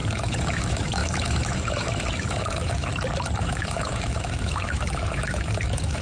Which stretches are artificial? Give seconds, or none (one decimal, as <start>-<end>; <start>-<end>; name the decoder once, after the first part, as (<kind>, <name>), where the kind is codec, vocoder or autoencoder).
0.0-2.9 (autoencoder, DAC-VAE); 3.4-6.0